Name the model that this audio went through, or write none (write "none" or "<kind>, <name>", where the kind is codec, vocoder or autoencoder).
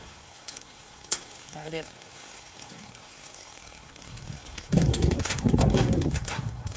codec, SNAC